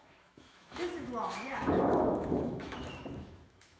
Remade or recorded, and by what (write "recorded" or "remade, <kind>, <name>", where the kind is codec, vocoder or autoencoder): remade, autoencoder, DAC-VAE